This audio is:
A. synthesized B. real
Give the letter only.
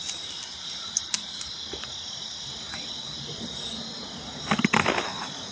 B